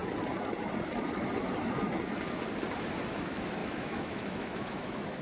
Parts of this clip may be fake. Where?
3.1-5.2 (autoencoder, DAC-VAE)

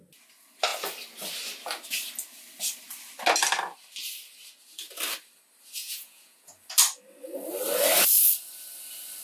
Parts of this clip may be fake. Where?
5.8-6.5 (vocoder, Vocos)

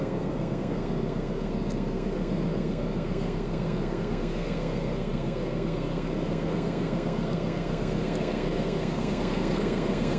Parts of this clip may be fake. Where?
0.0-10.2 (codec, SNAC)